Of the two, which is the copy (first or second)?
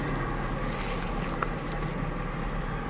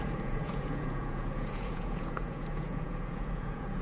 second